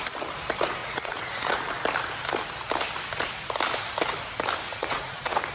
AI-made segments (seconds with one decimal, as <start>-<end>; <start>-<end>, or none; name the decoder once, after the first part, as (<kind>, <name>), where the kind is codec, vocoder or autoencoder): 0.8-1.6 (vocoder, Vocos); 4.7-5.5